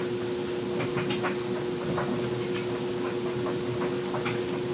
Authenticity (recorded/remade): recorded